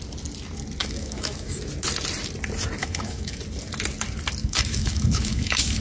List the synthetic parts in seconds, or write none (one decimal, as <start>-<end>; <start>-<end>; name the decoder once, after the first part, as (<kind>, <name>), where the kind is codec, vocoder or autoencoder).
0.8-1.6 (autoencoder, DAC-VAE); 2.8-3.4; 4.4-5.8